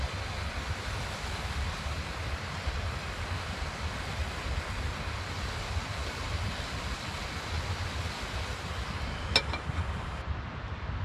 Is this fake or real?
real